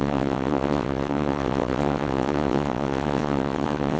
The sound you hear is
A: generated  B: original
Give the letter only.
A